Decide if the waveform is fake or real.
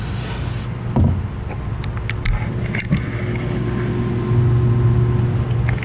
real